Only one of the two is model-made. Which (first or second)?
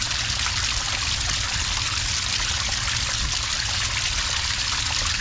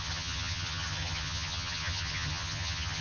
second